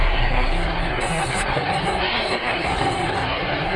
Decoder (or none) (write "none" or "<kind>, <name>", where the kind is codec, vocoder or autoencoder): codec, SNAC